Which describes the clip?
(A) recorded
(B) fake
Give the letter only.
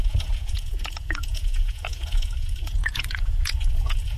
B